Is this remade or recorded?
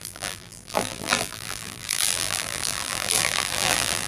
remade